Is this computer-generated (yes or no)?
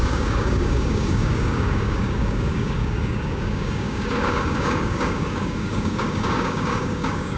yes